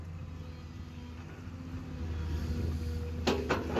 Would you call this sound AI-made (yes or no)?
no